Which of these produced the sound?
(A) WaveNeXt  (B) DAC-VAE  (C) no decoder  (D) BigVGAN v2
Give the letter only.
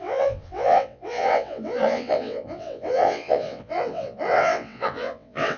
A